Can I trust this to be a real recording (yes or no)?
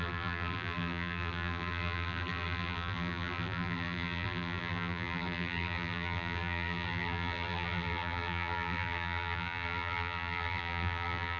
no